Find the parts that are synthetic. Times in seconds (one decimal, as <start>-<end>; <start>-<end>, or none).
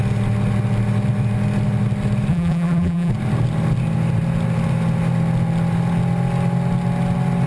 2.3-3.1